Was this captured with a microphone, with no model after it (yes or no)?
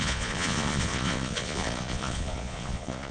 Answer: no